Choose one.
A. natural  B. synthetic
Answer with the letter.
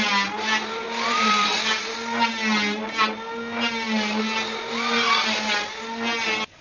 A